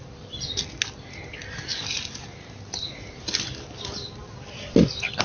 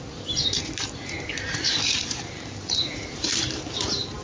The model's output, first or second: second